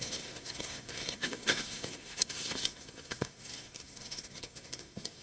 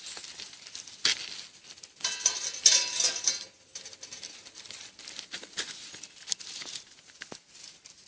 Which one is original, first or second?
second